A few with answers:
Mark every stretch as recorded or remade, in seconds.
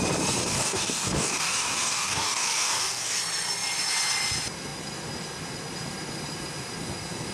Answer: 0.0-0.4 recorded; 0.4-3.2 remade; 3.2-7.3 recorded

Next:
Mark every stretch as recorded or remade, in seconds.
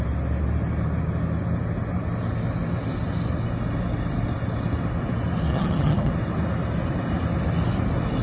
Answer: 0.0-5.5 recorded; 5.5-6.1 remade; 6.1-8.2 recorded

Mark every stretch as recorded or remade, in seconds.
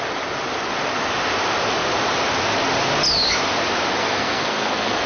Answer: 0.0-4.0 recorded; 4.0-5.1 remade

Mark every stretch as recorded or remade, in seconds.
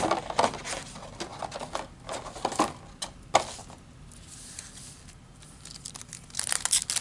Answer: 0.0-7.0 recorded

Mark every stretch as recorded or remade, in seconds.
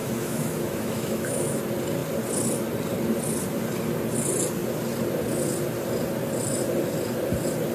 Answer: 0.0-1.6 remade; 1.6-7.7 recorded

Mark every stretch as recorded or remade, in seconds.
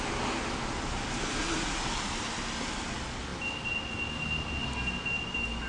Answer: 0.0-5.7 recorded